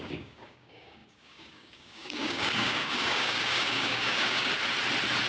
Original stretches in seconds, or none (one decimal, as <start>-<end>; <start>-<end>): 4.5-5.3